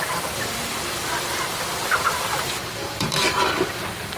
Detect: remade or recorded remade